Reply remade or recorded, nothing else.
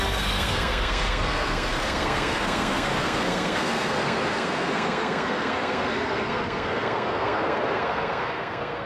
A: remade